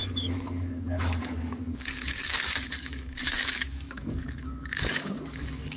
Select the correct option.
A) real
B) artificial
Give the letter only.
B